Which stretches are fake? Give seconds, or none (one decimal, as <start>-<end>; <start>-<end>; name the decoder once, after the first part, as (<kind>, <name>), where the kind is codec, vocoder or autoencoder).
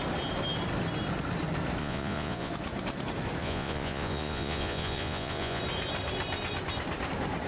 1.8-2.5 (vocoder, Vocos); 3.4-5.6